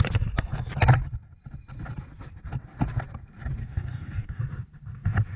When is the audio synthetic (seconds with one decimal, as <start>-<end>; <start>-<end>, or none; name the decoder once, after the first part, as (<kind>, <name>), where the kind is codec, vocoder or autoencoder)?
3.6-4.4 (codec, DAC)